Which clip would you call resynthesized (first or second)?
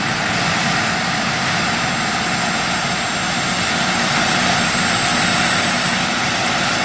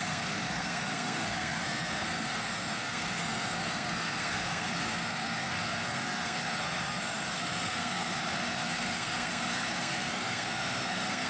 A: second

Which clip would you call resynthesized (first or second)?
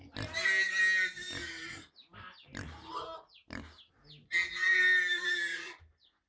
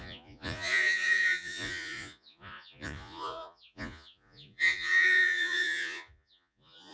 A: second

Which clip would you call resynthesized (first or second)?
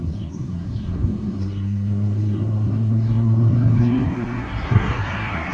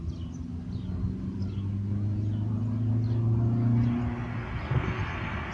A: first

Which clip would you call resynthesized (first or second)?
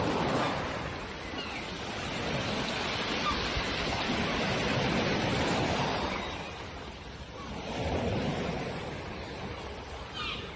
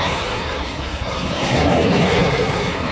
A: second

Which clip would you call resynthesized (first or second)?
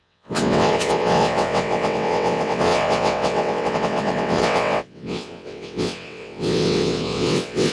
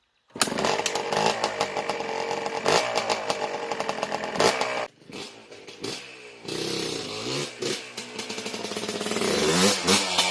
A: first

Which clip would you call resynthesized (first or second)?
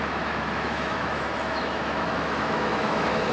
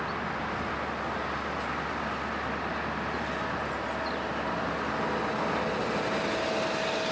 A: first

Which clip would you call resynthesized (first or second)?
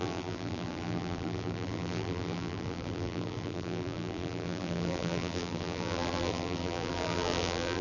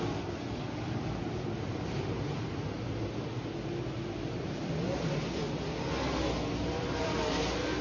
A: first